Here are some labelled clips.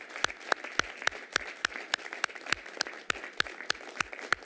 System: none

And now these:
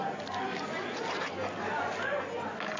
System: none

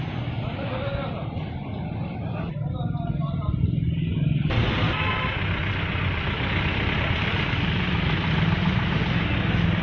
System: none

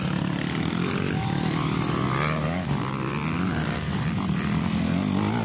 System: none